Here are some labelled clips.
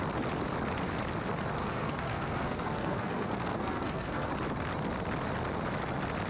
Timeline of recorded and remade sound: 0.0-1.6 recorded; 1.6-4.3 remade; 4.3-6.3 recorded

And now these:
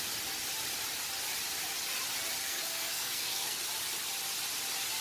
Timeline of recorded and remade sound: 0.0-2.4 recorded; 2.4-3.6 remade; 3.6-5.0 recorded

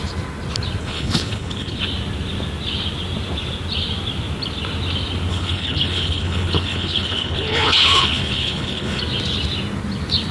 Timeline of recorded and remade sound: 0.0-0.8 recorded; 0.8-1.8 remade; 1.8-5.3 recorded; 5.3-9.0 remade; 9.0-10.3 recorded

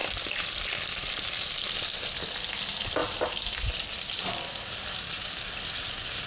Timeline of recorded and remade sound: 0.0-3.0 recorded; 3.0-5.7 remade; 5.7-6.3 recorded

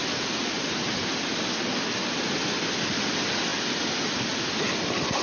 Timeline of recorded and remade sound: 0.0-5.2 recorded

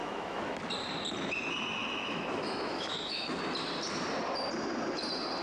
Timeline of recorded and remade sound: 0.0-0.6 remade; 0.6-1.8 recorded; 1.8-3.4 remade; 3.4-5.4 recorded